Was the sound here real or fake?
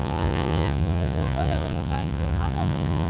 fake